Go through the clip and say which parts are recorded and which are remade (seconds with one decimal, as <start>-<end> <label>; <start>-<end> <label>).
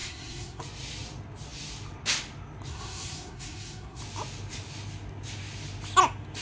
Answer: 0.0-0.6 remade; 0.6-2.7 recorded; 2.7-4.0 remade; 4.0-6.4 recorded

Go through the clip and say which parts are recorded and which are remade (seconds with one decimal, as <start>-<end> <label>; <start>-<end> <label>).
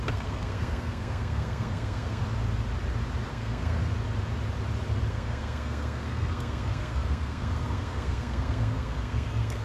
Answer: 0.0-2.2 remade; 2.2-3.3 recorded; 3.3-3.8 remade; 3.8-5.1 recorded; 5.1-9.6 remade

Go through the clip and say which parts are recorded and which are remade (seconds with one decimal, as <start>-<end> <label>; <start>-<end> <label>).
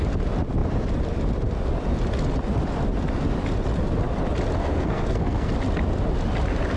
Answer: 0.0-4.6 recorded; 4.6-5.5 remade; 5.5-6.8 recorded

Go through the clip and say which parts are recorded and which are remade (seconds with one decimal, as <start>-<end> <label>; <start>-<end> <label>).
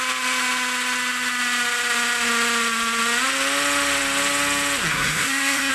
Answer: 0.0-4.9 recorded; 4.9-5.7 remade